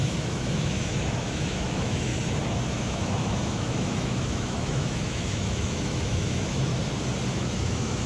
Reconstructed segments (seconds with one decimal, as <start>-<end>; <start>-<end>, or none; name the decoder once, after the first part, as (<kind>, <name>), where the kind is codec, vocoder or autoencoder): 0.0-2.1 (autoencoder, DAC-VAE); 2.7-6.7; 7.3-8.1